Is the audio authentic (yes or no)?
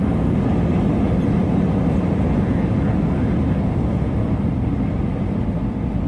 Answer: yes